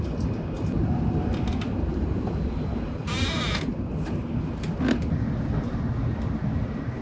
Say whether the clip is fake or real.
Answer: real